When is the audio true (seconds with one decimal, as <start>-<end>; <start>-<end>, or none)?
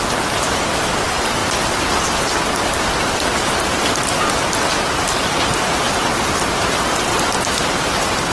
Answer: 0.0-8.3